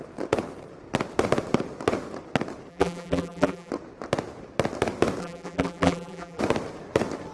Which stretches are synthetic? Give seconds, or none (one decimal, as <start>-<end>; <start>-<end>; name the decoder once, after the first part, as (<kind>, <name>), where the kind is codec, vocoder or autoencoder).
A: 2.7-3.7 (vocoder, BigVGAN v2); 5.2-6.4

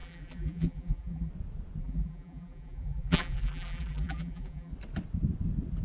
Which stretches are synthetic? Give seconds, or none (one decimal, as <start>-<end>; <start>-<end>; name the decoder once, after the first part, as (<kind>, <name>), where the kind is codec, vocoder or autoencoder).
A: 0.0-1.3 (vocoder, BigVGAN v2); 1.8-4.7